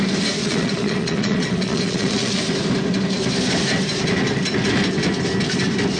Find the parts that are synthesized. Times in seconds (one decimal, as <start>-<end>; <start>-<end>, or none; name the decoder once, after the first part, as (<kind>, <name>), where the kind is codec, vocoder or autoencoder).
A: 0.4-2.4 (vocoder, Vocos)